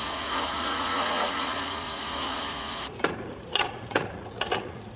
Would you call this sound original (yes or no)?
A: no